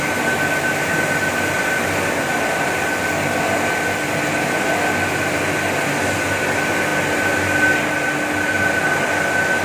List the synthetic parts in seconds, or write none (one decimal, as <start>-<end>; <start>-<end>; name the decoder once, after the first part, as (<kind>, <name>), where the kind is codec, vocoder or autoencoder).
none